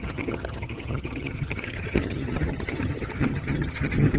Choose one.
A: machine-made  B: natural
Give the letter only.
A